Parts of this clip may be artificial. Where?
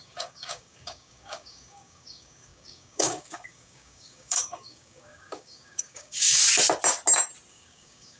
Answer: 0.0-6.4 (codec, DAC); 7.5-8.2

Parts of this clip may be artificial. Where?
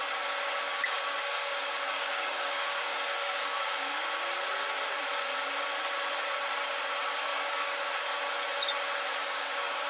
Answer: 0.7-4.0 (codec, DAC); 7.3-7.8; 9.2-9.9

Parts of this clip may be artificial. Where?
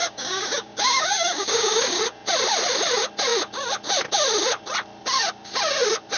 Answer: 0.0-2.0 (codec, DAC)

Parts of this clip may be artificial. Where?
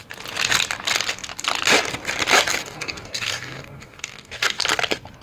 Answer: 2.6-4.6 (codec, DAC)